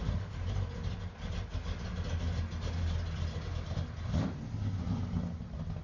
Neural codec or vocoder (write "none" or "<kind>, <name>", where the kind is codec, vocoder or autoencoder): none